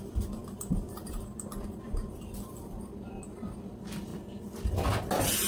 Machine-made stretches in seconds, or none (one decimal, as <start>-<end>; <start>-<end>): 0.0-4.1